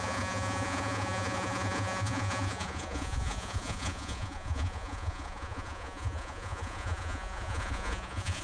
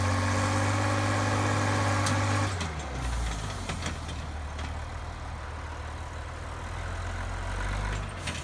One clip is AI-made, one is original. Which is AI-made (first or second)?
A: first